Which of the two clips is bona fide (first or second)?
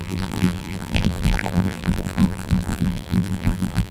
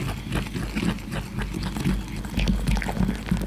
second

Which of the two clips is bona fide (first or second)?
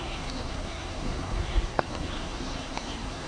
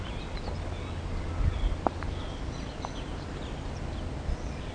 second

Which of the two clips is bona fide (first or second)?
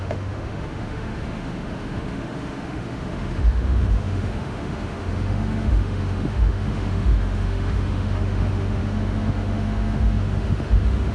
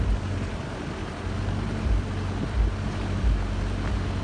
second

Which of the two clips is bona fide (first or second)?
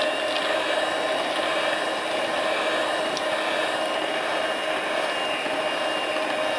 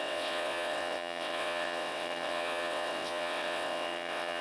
first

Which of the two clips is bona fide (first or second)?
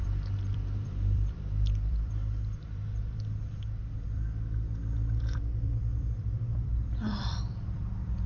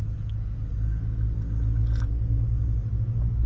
second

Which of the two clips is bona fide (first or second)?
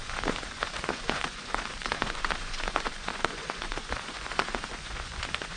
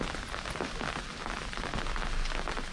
second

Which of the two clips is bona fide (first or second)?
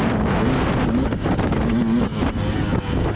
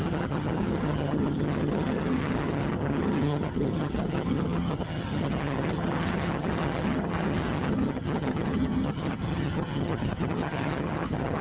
first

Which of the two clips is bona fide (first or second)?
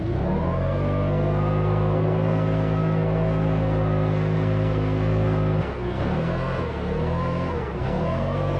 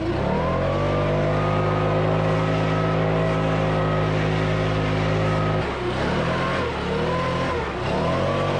second